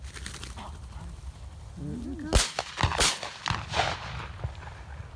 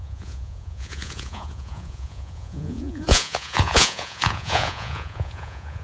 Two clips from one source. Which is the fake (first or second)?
second